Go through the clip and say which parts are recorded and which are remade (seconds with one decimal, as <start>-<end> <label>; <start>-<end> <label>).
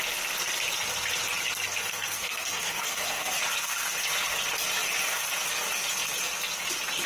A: 0.0-1.9 recorded; 1.9-3.3 remade; 3.3-7.1 recorded